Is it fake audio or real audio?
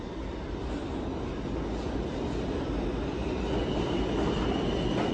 real